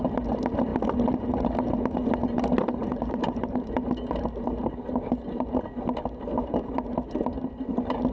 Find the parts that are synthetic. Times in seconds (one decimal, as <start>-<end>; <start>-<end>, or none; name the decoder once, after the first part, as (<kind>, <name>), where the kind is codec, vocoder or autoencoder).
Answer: 2.8-3.7 (vocoder, BigVGAN v2)